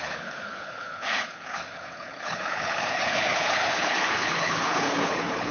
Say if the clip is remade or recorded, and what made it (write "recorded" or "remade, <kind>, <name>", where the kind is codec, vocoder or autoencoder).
remade, codec, HILCodec